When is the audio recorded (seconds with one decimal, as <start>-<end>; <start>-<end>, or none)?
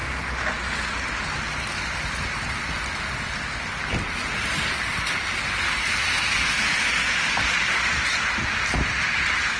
0.0-9.6